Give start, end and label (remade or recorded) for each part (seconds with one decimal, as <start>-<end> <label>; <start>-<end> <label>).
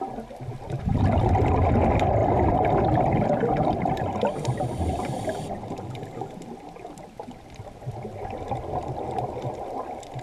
0.0-10.2 recorded